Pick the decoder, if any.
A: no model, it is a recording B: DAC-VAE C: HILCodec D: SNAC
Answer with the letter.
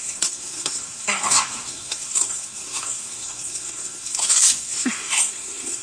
D